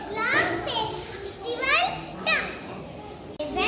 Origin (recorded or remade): recorded